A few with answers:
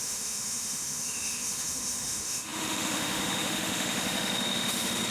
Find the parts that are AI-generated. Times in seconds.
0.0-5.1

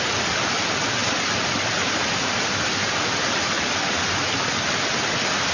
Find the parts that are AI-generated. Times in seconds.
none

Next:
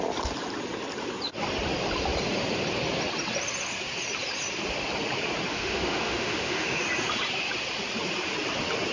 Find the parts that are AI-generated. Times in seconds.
5.5-6.8

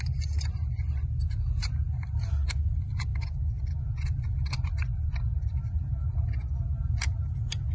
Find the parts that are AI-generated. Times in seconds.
none

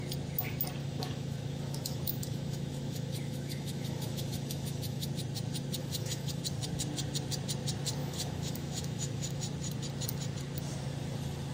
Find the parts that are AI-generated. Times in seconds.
0.8-5.1; 5.8-6.4; 8.0-9.4

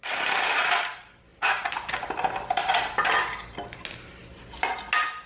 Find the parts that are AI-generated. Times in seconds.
none

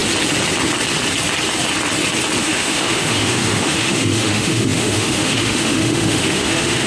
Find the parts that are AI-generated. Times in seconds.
2.4-6.9

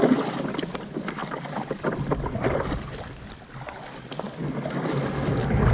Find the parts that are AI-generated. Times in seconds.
none